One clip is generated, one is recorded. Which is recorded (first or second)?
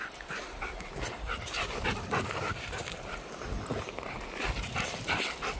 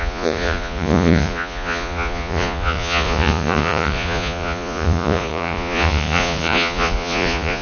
first